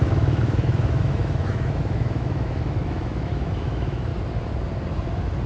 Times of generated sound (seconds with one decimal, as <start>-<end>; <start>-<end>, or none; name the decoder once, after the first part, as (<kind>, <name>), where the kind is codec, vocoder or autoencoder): 0.0-4.1 (autoencoder, DAC-VAE)